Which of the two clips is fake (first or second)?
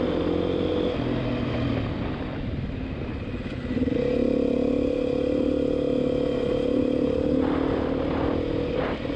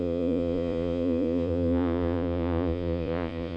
second